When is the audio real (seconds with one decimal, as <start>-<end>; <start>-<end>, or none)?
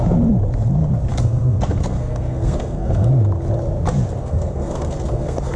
0.0-1.1; 3.1-4.2